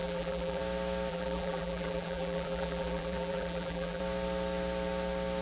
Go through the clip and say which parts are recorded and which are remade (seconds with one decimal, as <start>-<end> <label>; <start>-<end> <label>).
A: 0.0-0.6 remade; 0.6-1.1 recorded; 1.1-4.0 remade; 4.0-5.4 recorded